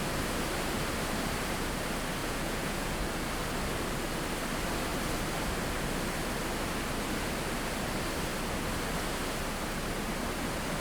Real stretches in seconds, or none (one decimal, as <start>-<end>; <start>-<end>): 0.0-2.2; 3.0-10.8